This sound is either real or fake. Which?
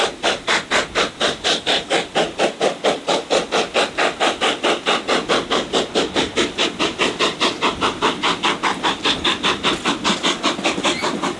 real